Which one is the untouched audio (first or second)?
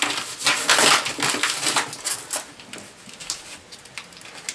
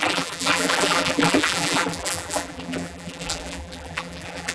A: first